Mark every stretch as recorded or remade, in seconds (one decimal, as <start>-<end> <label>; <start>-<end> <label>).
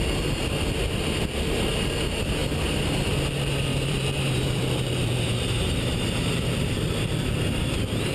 0.0-3.7 recorded; 3.7-7.3 remade; 7.3-8.1 recorded